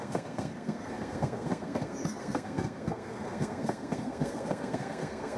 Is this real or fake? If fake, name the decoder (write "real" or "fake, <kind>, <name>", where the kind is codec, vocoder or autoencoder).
fake, codec, SNAC